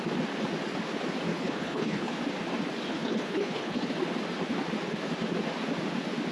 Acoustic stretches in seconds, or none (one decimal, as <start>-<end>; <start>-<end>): 0.0-1.3; 2.2-2.9; 3.9-6.3